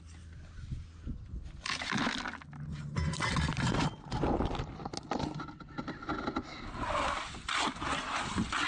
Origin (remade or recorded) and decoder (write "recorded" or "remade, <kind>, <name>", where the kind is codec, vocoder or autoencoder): recorded